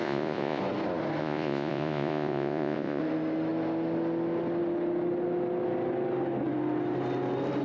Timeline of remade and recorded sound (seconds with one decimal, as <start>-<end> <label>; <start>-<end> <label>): 0.0-0.6 remade; 0.6-1.2 recorded; 1.2-3.0 remade; 3.0-7.6 recorded